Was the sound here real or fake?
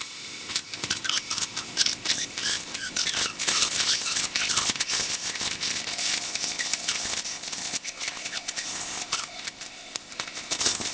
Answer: fake